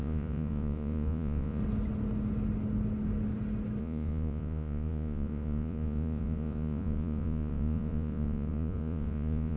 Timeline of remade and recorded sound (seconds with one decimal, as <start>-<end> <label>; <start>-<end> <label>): 0.0-1.6 remade; 1.6-3.8 recorded; 3.8-9.6 remade